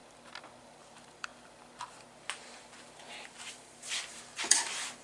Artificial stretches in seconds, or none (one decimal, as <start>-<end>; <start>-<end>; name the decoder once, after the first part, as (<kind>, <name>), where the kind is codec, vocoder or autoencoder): 0.6-1.3 (vocoder, BigVGAN v2); 3.5-5.0